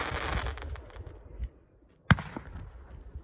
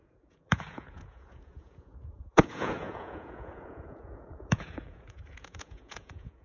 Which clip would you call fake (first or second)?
second